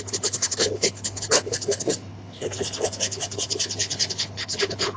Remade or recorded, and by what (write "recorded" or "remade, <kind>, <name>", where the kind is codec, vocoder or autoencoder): remade, codec, HILCodec